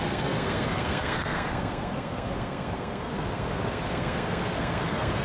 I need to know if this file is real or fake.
fake